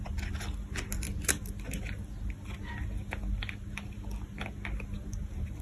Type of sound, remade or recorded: recorded